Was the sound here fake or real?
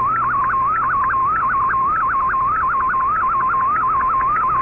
real